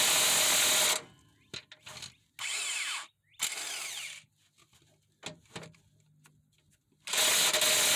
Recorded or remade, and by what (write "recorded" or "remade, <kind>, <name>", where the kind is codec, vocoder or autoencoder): recorded